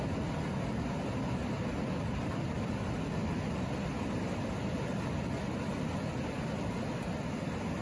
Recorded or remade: recorded